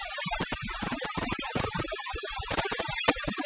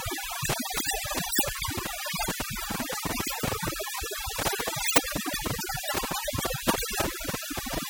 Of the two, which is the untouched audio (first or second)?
second